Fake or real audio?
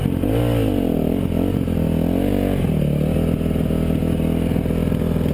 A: real